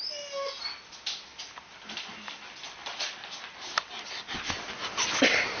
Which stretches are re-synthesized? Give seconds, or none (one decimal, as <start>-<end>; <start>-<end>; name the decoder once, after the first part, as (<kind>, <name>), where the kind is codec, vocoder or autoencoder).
none